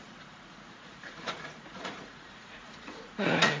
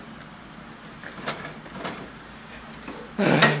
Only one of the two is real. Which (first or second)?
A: second